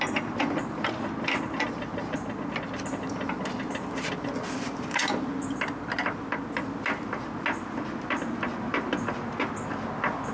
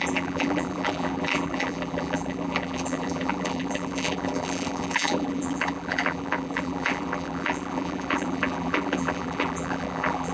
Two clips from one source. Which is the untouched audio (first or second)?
first